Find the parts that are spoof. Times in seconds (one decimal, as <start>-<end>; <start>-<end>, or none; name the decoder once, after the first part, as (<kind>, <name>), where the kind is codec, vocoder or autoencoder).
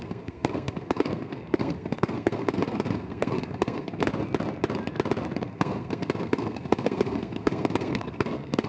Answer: 0.0-4.1 (codec, SNAC); 5.4-8.7